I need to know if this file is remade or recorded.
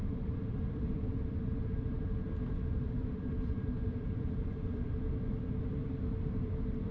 remade